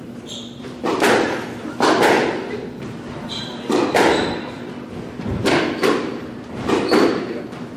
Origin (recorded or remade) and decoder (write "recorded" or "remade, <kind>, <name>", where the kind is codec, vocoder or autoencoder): remade, vocoder, BigVGAN v2